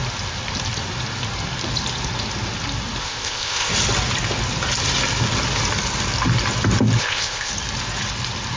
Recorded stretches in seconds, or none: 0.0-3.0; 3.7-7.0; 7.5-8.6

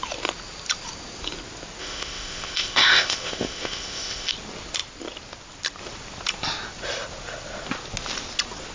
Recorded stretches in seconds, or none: 0.0-1.8; 4.3-8.7